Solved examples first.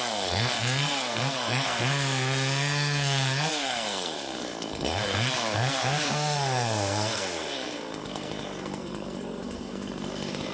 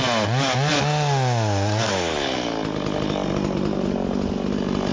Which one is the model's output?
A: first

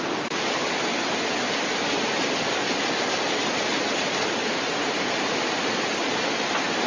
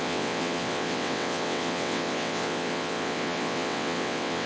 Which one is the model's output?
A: second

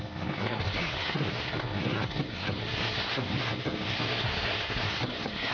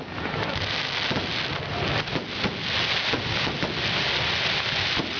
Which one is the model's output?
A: first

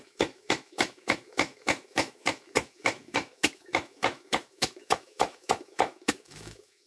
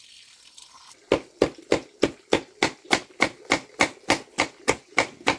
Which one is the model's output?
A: first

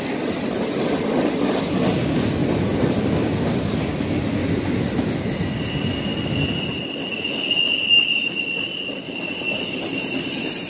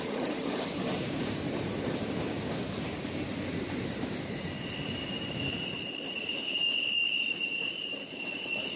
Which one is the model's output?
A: second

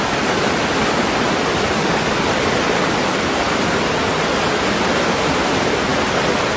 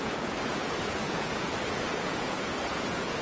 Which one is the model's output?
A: second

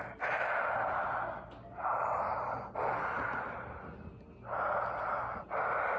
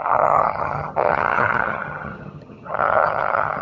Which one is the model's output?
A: second